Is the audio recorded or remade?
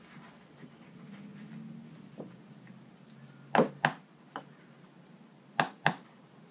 recorded